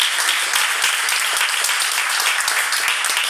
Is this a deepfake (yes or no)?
no